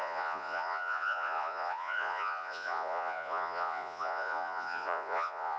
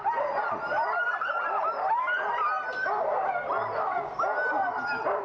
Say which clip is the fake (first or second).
first